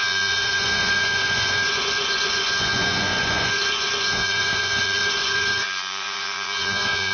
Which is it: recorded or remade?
remade